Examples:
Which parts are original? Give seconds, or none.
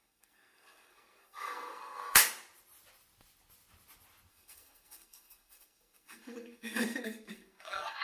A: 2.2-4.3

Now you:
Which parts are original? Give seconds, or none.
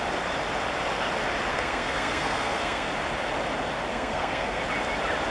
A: 0.0-1.5; 2.9-3.9; 4.6-5.3